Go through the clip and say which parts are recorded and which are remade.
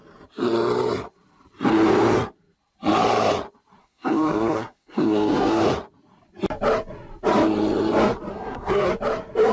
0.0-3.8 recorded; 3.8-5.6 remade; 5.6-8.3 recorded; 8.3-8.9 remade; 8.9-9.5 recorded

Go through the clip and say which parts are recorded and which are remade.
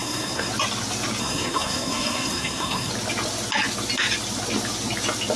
0.0-0.5 remade; 0.5-1.2 recorded; 1.2-2.9 remade; 2.9-5.4 recorded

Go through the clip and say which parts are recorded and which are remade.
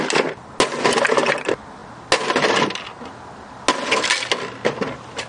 0.0-5.3 recorded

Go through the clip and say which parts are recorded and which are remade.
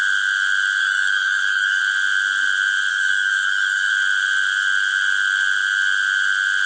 0.0-0.8 recorded; 0.8-1.8 remade; 1.8-2.9 recorded; 2.9-3.9 remade; 3.9-6.7 recorded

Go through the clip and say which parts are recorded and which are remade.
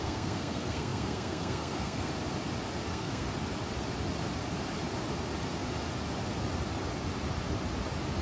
0.0-2.1 remade; 2.1-2.9 recorded; 2.9-3.3 remade; 3.3-8.2 recorded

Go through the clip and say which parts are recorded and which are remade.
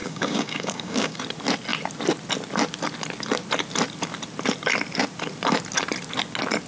0.0-1.2 remade; 1.2-6.7 recorded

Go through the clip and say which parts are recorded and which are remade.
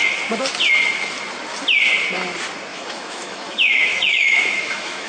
0.0-2.7 recorded; 2.7-5.1 remade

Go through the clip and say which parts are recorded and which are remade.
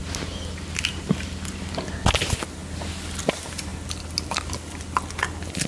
0.0-5.7 recorded